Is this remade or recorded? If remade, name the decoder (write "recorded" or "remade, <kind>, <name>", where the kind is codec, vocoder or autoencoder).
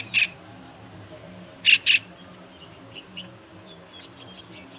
recorded